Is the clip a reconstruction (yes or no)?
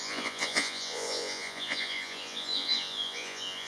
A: yes